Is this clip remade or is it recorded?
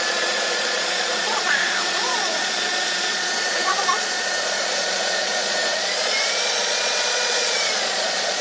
remade